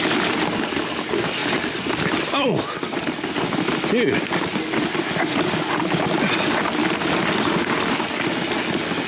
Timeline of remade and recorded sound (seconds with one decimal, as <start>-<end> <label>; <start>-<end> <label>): 0.0-9.1 recorded